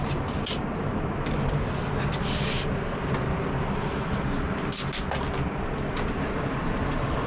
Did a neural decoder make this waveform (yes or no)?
no